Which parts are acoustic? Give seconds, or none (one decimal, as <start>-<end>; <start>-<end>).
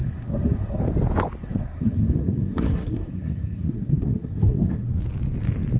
0.8-1.4; 4.9-5.8